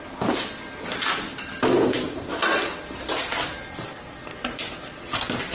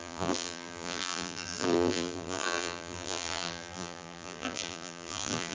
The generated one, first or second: second